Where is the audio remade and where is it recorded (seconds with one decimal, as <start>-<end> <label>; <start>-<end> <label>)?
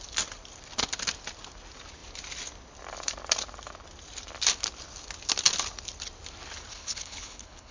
0.0-6.7 recorded; 6.7-7.7 remade